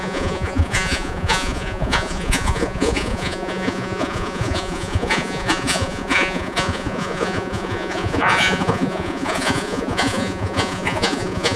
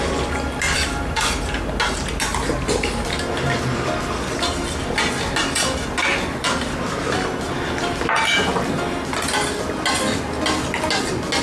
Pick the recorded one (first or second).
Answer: second